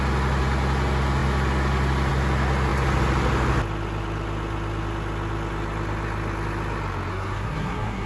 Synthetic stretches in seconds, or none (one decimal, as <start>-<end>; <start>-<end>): 7.1-8.1